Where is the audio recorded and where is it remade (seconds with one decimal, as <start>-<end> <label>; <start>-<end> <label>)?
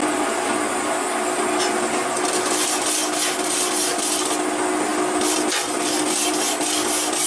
0.0-7.3 recorded